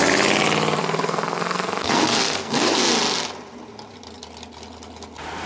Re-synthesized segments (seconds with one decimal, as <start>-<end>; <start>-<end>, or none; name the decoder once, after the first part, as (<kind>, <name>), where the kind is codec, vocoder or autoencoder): 0.8-2.8 (codec, SNAC)